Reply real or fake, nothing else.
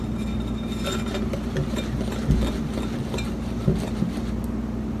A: real